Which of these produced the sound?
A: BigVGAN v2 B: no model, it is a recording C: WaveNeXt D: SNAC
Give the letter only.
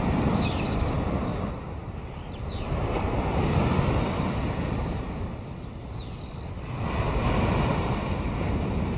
A